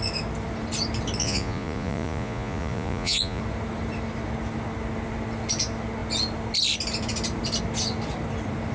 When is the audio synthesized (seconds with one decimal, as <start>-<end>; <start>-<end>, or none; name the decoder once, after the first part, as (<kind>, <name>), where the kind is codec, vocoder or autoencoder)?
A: 1.2-3.4 (vocoder, Vocos)